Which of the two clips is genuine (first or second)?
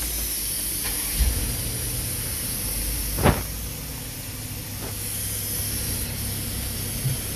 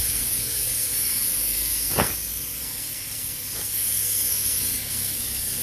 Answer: first